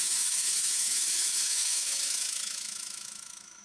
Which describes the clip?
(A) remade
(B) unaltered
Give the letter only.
A